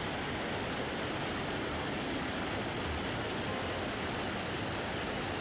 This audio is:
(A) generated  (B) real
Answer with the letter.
B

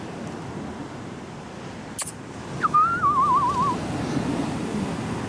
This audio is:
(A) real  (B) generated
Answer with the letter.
A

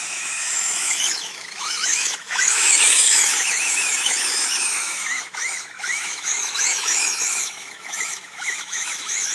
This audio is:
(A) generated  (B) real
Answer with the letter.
A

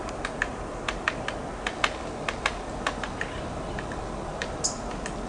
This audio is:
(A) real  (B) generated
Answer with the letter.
A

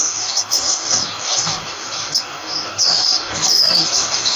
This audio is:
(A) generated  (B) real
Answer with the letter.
A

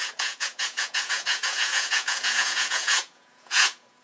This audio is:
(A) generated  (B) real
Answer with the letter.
A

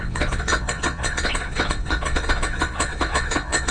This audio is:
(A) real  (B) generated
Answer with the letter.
B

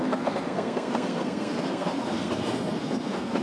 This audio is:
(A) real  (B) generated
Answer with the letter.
B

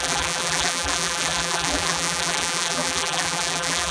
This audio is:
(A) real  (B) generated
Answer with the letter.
B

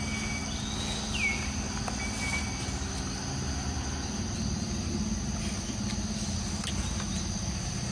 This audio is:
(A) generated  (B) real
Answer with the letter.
B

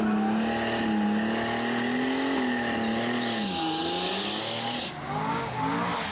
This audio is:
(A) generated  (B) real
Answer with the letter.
B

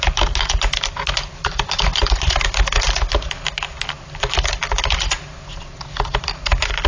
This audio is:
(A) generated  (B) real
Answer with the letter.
B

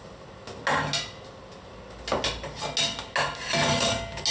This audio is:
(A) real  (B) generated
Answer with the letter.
A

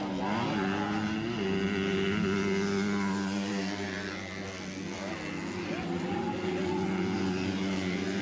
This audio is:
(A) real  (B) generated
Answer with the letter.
A